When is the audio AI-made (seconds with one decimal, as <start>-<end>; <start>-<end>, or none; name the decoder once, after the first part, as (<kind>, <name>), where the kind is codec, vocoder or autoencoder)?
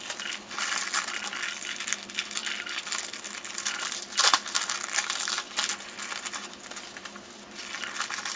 none